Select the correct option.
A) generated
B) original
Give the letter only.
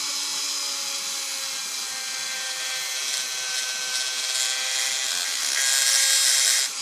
B